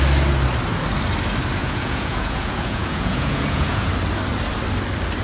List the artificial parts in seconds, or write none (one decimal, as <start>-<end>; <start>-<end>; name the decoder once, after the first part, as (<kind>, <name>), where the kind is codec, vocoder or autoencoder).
1.6-3.9 (vocoder, Vocos)

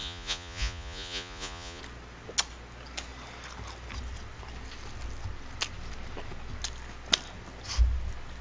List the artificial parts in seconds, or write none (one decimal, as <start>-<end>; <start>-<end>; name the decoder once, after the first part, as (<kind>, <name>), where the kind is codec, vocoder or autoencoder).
0.0-1.8 (vocoder, Vocos)

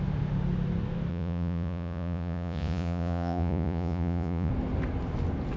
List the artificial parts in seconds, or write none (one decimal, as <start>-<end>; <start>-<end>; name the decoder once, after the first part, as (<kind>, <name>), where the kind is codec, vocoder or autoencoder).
1.1-4.5 (vocoder, Vocos)